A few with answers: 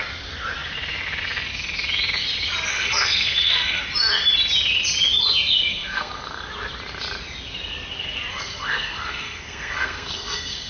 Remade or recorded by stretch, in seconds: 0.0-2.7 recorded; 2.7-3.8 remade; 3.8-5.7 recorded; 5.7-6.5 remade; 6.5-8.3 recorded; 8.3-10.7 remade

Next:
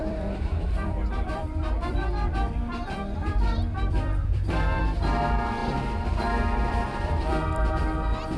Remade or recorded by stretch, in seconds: 0.0-4.8 remade; 4.8-5.6 recorded; 5.6-7.7 remade; 7.7-8.4 recorded

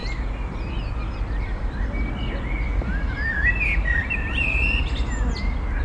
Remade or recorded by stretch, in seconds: 0.0-4.0 recorded; 4.0-4.8 remade; 4.8-5.8 recorded

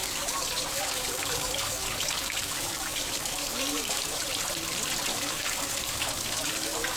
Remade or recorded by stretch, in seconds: 0.0-4.2 remade; 4.2-5.1 recorded; 5.1-7.0 remade

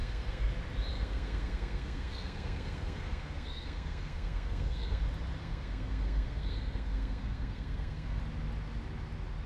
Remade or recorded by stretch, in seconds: 0.0-0.5 remade; 0.5-0.9 recorded; 0.9-5.0 remade; 5.0-5.4 recorded; 5.4-8.2 remade; 8.2-9.5 recorded

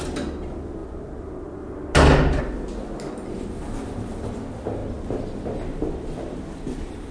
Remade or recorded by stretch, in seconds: 0.0-7.1 recorded